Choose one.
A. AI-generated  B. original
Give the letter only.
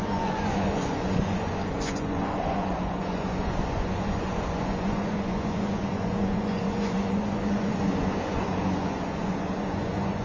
A